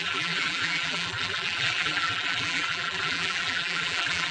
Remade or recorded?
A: remade